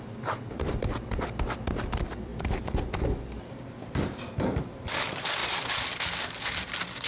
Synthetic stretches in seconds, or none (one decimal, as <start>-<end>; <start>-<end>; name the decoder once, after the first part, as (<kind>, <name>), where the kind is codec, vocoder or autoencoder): 0.0-7.1 (vocoder, BigVGAN v2)